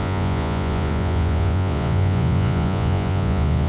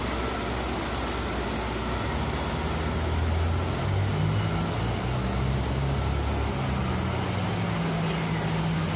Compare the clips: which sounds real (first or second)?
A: second